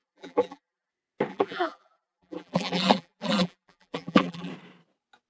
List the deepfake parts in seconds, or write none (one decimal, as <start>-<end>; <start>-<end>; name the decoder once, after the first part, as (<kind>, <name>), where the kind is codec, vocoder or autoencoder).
0.0-0.9 (vocoder, BigVGAN v2); 1.3-4.5